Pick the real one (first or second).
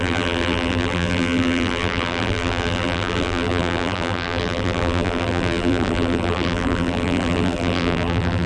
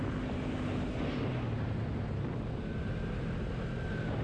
second